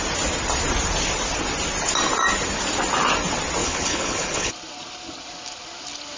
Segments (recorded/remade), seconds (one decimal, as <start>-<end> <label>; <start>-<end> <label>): 0.0-3.6 recorded; 3.6-4.5 remade; 4.5-6.2 recorded